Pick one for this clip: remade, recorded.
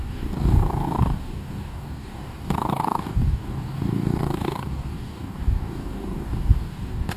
remade